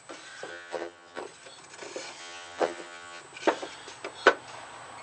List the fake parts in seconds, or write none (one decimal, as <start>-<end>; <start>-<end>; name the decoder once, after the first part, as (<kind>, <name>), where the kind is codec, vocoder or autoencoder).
0.5-1.2 (vocoder, HiFi-GAN); 2.2-3.2